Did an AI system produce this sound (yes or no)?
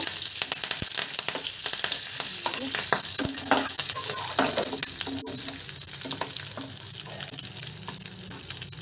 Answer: no